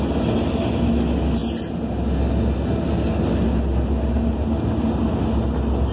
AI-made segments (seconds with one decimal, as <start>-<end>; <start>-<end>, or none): none